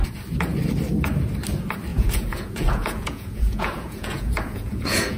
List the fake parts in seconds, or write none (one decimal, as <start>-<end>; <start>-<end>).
1.9-5.2